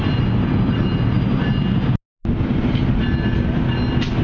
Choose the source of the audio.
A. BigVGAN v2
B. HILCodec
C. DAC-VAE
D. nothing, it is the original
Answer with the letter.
D